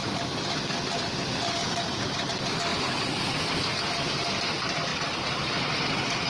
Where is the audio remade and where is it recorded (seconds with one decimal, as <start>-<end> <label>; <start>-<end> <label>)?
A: 0.0-6.3 recorded